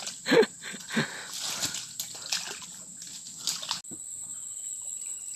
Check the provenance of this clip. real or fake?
real